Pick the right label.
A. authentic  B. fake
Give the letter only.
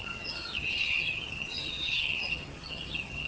B